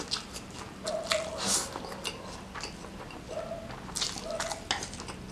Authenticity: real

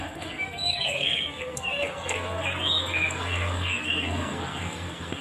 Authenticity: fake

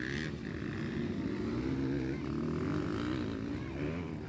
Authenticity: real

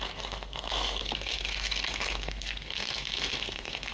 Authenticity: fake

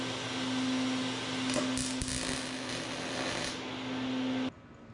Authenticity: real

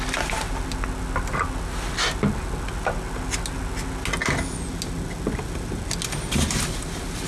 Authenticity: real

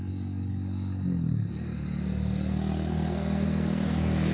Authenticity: fake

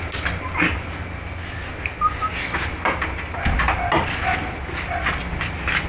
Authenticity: real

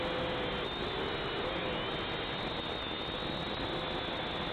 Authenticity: real